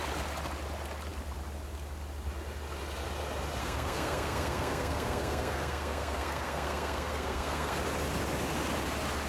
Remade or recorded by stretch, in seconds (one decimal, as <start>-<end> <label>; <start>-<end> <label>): 0.0-3.6 recorded; 3.6-7.8 remade; 7.8-9.3 recorded

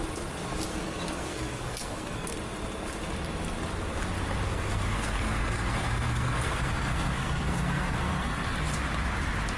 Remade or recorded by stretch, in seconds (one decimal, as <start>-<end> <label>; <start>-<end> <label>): 0.0-0.7 recorded; 0.7-2.3 remade; 2.3-4.5 recorded; 4.5-8.7 remade; 8.7-9.6 recorded

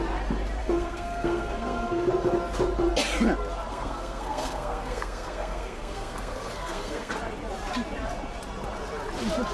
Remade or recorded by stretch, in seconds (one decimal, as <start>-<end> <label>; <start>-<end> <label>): 0.0-0.6 recorded; 0.6-2.1 remade; 2.1-3.7 recorded; 3.7-7.1 remade; 7.1-9.5 recorded

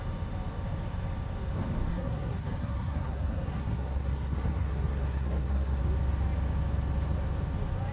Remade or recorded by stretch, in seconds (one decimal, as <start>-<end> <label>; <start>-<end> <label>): 0.0-1.9 recorded; 1.9-5.8 remade; 5.8-7.9 recorded

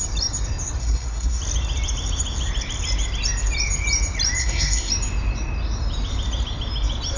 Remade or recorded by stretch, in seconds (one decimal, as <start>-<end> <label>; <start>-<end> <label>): 0.0-0.8 recorded; 0.8-1.4 remade; 1.4-4.4 recorded; 4.4-4.9 remade; 4.9-7.2 recorded

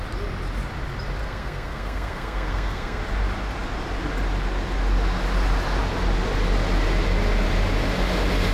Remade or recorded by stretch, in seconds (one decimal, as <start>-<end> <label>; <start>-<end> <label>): 0.0-1.2 recorded; 1.2-3.0 remade; 3.0-8.5 recorded